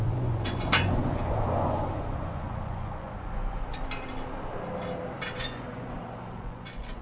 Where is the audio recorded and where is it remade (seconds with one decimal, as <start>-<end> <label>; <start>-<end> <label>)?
0.0-3.7 remade; 3.7-5.4 recorded; 5.4-7.0 remade